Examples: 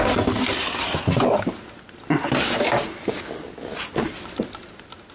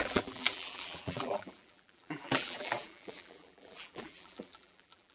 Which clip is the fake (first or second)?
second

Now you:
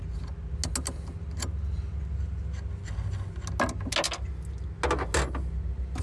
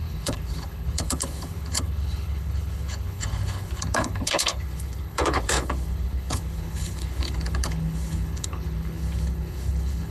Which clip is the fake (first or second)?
second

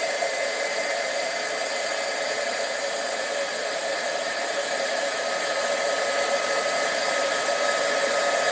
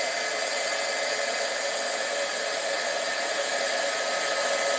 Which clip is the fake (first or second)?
first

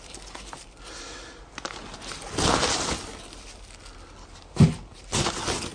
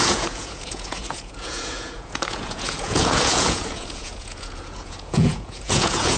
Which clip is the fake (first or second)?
second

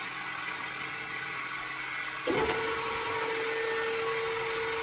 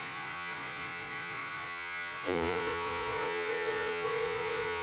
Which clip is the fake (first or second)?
second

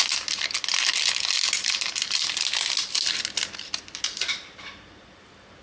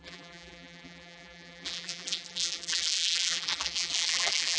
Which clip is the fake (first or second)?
second